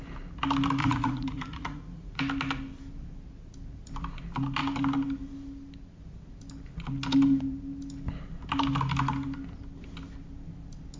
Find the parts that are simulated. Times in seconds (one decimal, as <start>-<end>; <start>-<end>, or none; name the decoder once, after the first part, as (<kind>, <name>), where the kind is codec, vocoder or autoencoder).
0.8-2.2 (vocoder, Vocos)